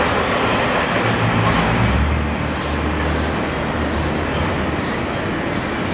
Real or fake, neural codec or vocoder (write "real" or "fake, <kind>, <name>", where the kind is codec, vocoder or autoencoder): real